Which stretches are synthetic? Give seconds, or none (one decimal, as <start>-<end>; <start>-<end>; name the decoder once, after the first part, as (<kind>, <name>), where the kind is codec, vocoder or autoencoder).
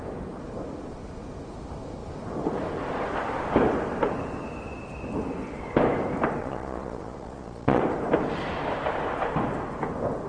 6.4-7.8 (vocoder, Vocos)